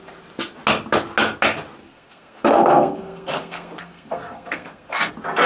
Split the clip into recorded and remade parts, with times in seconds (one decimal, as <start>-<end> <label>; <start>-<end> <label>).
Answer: 0.0-1.8 recorded; 1.8-5.1 remade; 5.1-5.5 recorded